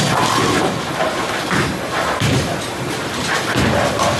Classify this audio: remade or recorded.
recorded